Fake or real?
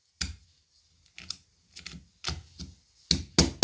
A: real